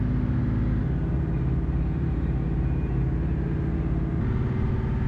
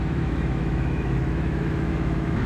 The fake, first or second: second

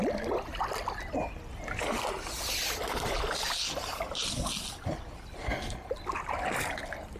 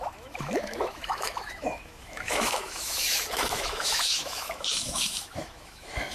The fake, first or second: second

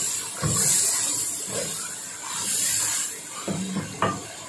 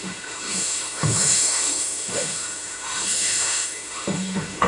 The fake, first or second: second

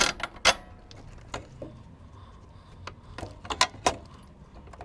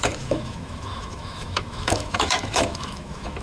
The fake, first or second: second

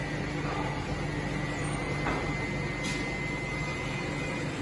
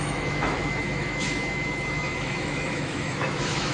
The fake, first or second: second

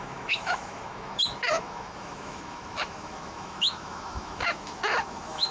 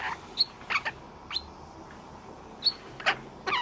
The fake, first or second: first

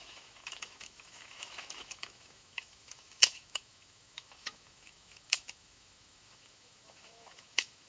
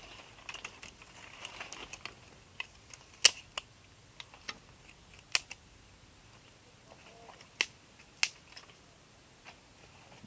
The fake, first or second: first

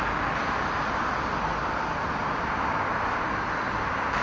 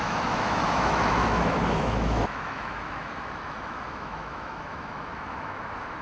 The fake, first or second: second